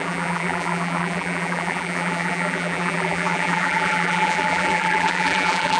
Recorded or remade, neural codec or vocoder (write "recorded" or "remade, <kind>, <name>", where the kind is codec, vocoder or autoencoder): remade, vocoder, BigVGAN v2